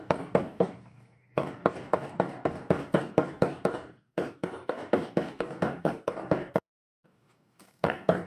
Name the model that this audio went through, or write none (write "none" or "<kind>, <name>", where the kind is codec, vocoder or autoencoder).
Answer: codec, DAC